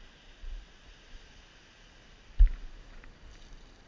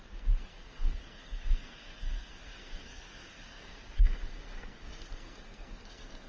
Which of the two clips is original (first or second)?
first